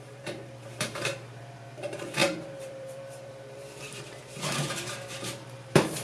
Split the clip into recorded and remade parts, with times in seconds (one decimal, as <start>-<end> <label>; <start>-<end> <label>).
0.0-6.0 remade